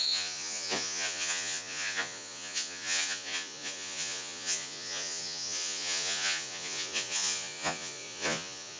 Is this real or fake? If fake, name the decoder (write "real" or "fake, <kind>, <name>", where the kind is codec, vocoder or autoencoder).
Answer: fake, vocoder, Vocos